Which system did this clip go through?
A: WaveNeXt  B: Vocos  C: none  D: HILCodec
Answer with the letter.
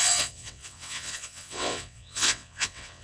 A